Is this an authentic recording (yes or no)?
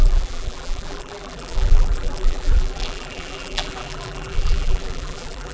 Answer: no